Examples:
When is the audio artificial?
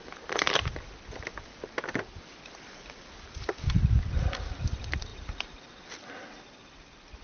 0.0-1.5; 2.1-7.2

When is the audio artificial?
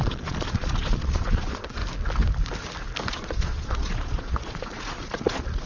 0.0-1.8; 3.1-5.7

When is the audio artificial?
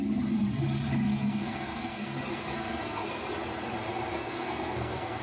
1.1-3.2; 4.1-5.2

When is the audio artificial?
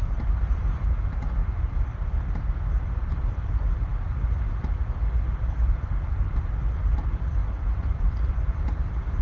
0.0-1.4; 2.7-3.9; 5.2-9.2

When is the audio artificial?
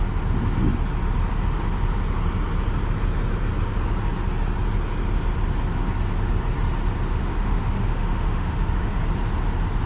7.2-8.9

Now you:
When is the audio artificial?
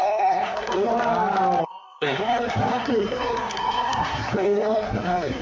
0.0-0.9; 1.6-5.4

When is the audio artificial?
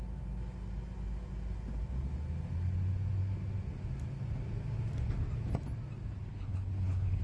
6.3-7.2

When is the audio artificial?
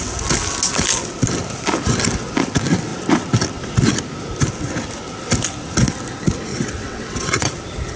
6.5-7.5